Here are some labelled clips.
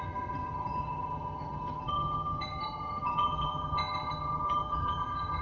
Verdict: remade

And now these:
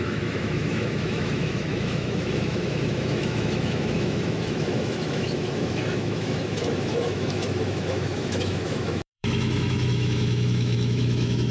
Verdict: remade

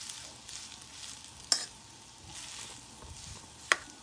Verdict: recorded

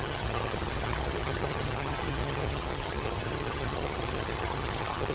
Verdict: remade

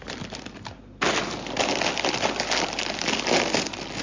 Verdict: recorded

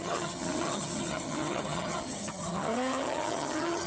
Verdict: remade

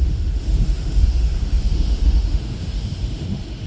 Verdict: remade